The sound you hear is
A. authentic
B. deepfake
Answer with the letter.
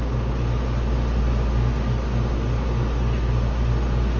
A